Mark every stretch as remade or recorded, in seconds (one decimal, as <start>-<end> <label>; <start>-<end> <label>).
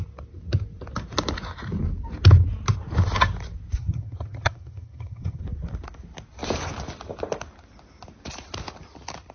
0.0-3.8 recorded; 3.8-5.4 remade; 5.4-9.3 recorded